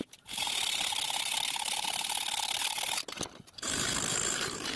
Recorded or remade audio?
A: remade